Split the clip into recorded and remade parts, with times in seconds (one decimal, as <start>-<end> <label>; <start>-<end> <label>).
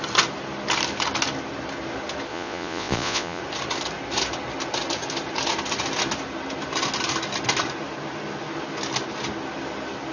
0.0-2.3 recorded; 2.3-3.4 remade; 3.4-10.1 recorded